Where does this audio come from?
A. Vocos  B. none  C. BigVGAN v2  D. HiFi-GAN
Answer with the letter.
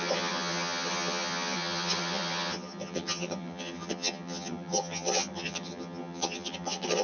D